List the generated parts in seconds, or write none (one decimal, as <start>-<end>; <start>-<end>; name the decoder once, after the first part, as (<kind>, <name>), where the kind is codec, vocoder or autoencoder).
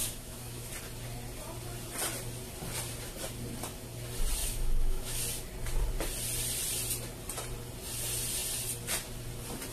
0.0-0.7 (autoencoder, DAC-VAE); 4.4-5.2